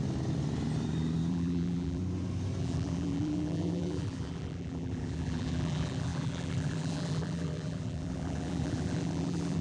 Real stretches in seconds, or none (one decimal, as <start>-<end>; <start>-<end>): 0.0-1.3; 2.0-2.6